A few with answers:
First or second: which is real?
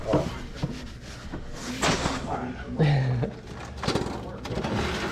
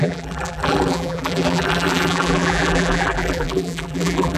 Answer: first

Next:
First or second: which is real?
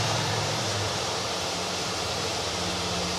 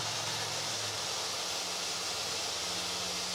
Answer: second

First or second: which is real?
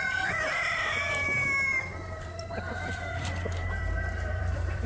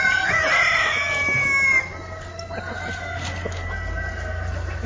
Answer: second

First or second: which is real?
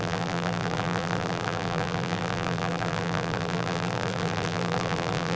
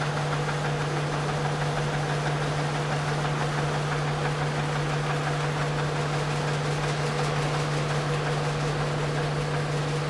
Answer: second